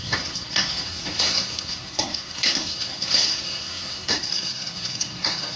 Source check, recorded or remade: remade